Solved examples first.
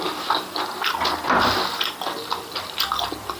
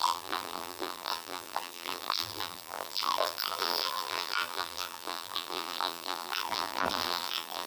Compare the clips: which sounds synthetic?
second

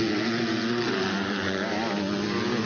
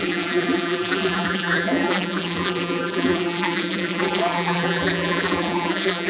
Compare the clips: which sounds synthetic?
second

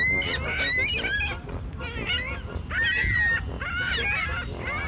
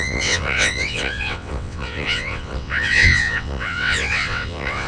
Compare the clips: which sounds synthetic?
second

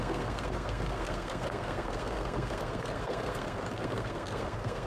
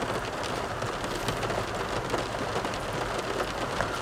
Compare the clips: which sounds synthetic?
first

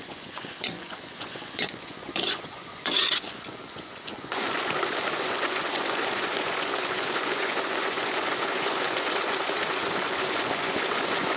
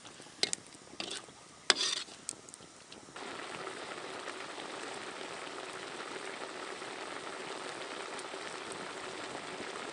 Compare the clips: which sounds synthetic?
first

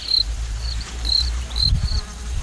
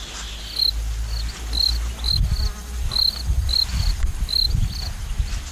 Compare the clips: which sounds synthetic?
first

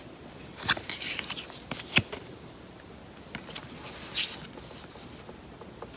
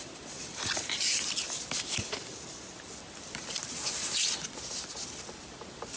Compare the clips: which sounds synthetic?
second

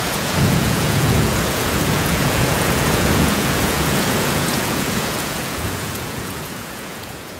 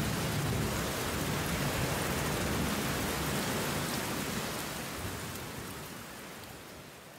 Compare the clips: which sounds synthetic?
first